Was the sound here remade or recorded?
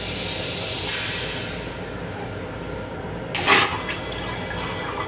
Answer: recorded